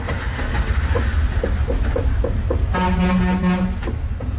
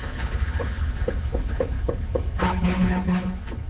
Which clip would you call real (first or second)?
first